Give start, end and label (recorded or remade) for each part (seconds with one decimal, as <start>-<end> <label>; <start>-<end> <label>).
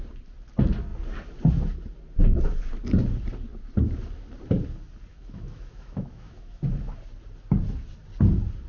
0.0-5.1 recorded; 5.1-6.6 remade; 6.6-8.7 recorded